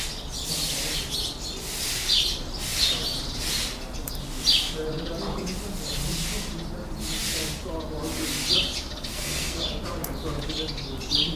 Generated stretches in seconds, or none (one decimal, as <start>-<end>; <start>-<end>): 9.1-9.6